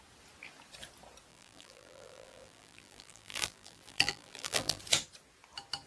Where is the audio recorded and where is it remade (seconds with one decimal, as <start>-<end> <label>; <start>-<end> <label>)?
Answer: 0.0-1.3 recorded; 1.3-4.8 remade; 4.8-5.9 recorded

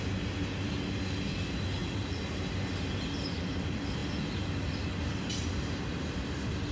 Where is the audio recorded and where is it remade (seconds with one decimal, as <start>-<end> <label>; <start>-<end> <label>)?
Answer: 0.0-1.8 recorded; 1.8-2.4 remade; 2.4-6.7 recorded